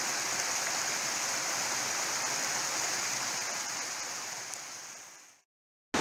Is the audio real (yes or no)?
yes